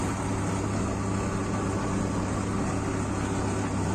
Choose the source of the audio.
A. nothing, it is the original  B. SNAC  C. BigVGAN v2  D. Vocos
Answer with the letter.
A